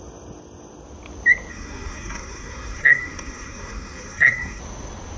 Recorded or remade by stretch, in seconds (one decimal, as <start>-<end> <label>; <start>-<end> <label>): 0.0-1.5 recorded; 1.5-4.6 remade; 4.6-5.2 recorded